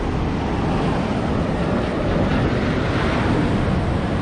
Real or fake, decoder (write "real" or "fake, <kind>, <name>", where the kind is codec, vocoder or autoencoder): real